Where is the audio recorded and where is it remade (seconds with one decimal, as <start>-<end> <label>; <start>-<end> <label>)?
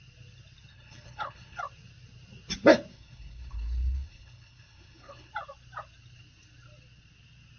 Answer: 0.0-0.7 recorded; 0.7-1.6 remade; 1.6-2.9 recorded; 2.9-5.3 remade; 5.3-7.6 recorded